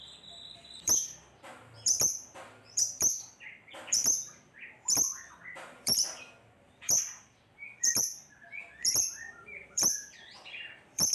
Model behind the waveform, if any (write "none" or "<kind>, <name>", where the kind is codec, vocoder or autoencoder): vocoder, BigVGAN v2